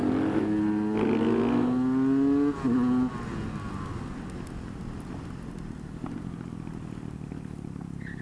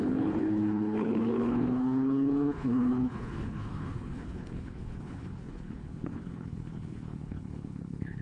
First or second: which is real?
first